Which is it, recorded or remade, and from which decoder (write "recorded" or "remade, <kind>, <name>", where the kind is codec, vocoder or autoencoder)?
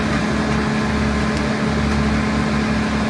recorded